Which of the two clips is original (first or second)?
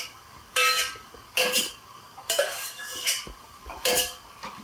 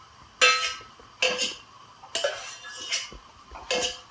second